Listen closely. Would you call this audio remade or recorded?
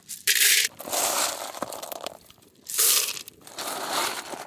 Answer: remade